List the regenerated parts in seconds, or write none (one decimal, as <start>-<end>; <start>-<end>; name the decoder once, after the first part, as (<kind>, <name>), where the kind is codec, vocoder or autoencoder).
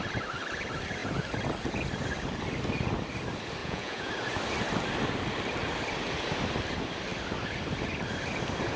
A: 3.6-4.1 (vocoder, Vocos)